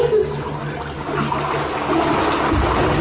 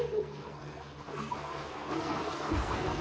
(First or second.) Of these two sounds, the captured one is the first